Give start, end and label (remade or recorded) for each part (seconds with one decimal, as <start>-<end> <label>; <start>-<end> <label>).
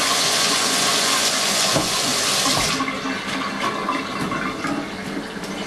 0.0-2.1 remade; 2.1-5.7 recorded